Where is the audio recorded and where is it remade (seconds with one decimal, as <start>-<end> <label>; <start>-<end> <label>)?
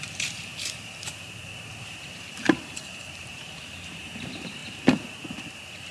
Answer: 0.0-4.6 remade; 4.6-5.9 recorded